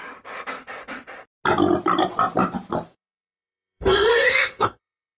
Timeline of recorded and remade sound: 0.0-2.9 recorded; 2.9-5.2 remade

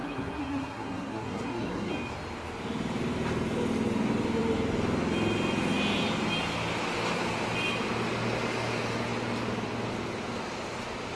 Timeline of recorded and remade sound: 0.0-1.9 remade; 1.9-11.2 recorded

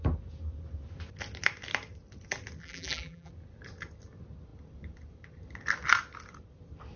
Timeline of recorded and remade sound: 0.0-2.6 recorded; 2.6-3.3 remade; 3.3-7.0 recorded

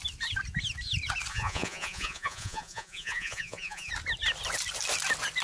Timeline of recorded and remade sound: 0.0-1.3 recorded; 1.3-3.9 remade; 3.9-5.4 recorded

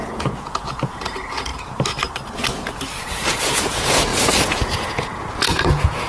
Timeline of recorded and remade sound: 0.0-1.5 remade; 1.5-3.0 recorded; 3.0-6.1 remade

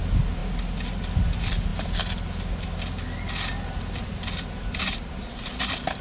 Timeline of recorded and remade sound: 0.0-6.0 recorded

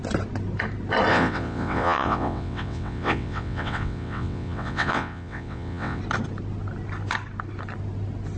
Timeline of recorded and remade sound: 0.0-1.1 recorded; 1.1-6.0 remade; 6.0-8.4 recorded